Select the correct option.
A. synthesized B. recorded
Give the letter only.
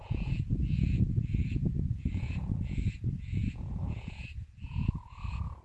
A